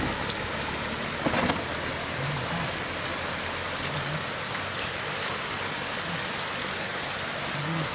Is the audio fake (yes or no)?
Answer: no